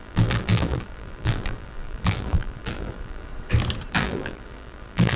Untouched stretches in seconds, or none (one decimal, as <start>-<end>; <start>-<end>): 3.3-3.9